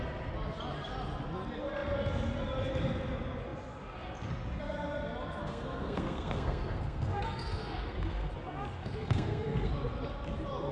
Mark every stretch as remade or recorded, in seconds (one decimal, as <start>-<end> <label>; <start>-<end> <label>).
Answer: 0.0-5.4 recorded; 5.4-8.3 remade; 8.3-8.8 recorded; 8.8-9.7 remade; 9.7-10.7 recorded